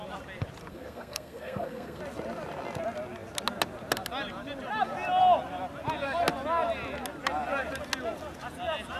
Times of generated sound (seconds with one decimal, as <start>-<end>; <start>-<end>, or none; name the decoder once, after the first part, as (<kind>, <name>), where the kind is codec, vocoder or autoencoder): 0.7-2.0 (codec, SNAC)